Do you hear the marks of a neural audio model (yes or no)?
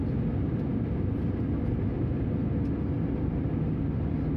no